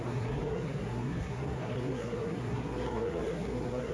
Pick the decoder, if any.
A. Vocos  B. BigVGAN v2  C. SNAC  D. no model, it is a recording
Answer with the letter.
C